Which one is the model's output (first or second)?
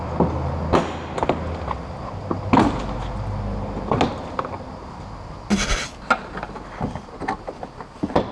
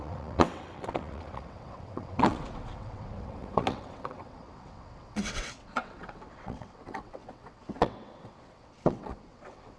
second